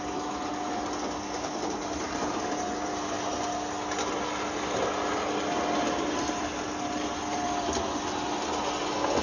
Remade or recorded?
recorded